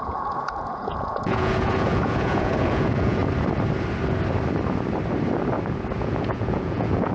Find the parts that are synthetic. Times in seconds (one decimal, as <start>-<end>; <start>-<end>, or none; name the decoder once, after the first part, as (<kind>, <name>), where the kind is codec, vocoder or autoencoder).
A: 0.0-3.2 (vocoder, Vocos); 6.0-7.1